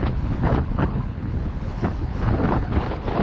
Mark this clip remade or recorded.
remade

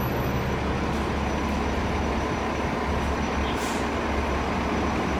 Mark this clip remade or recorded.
recorded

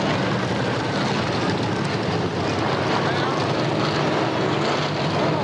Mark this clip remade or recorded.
recorded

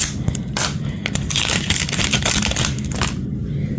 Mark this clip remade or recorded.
recorded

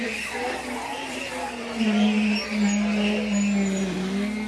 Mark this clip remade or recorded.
recorded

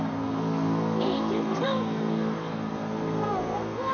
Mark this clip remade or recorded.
remade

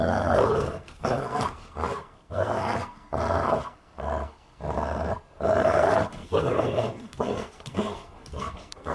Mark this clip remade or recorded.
remade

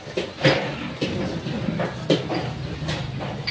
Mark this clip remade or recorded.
recorded